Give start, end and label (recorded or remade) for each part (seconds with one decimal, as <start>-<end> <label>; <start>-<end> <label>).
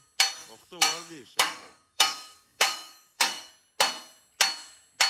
0.0-0.4 recorded; 0.4-3.5 remade; 3.5-5.1 recorded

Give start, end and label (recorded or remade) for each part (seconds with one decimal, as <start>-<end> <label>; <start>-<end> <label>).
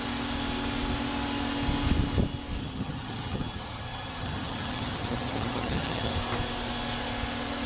0.0-2.6 recorded; 2.6-6.1 remade; 6.1-7.7 recorded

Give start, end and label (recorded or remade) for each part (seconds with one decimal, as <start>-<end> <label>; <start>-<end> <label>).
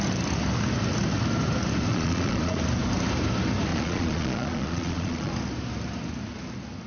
0.0-1.9 recorded; 1.9-2.6 remade; 2.6-3.7 recorded; 3.7-5.3 remade; 5.3-6.9 recorded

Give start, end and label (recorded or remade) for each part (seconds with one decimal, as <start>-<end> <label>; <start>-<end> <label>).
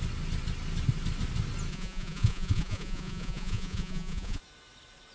0.0-1.7 recorded; 1.7-4.4 remade; 4.4-5.1 recorded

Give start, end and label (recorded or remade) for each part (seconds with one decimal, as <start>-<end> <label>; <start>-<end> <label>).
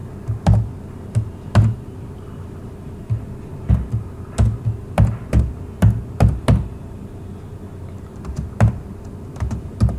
0.0-10.0 recorded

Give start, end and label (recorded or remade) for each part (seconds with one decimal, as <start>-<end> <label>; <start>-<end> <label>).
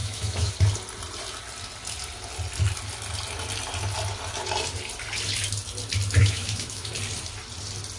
0.0-0.5 remade; 0.5-6.2 recorded; 6.2-6.9 remade; 6.9-8.0 recorded